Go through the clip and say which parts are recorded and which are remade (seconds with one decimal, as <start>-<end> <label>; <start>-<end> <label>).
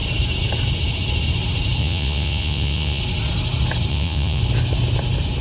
0.0-1.8 recorded; 1.8-3.0 remade; 3.0-3.9 recorded; 3.9-4.4 remade; 4.4-5.4 recorded